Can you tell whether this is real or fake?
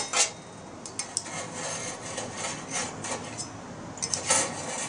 real